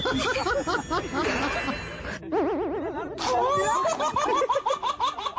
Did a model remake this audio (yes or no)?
no